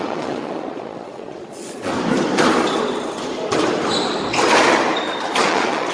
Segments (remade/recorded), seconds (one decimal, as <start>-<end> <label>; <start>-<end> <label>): 0.0-1.9 remade; 1.9-5.4 recorded; 5.4-5.9 remade